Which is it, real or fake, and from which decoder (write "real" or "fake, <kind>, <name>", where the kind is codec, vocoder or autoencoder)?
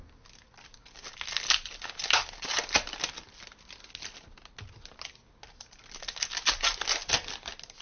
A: real